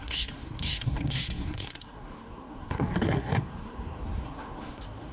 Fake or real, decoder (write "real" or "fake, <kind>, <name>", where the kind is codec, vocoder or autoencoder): fake, codec, SNAC